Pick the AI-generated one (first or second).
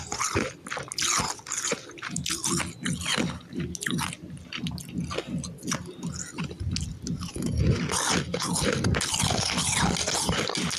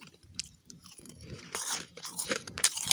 second